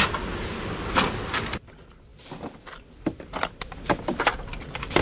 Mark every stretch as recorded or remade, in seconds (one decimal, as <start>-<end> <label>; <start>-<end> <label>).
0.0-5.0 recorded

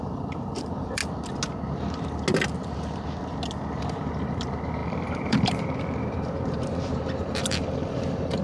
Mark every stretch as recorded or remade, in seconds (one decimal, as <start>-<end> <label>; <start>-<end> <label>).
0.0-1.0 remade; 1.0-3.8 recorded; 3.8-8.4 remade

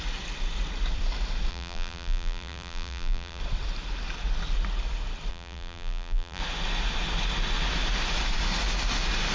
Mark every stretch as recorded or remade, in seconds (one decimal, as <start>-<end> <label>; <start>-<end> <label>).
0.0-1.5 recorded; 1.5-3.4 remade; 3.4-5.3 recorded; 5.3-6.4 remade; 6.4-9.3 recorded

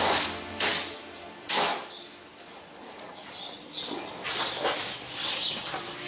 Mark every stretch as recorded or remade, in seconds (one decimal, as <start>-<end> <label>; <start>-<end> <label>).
0.0-6.1 recorded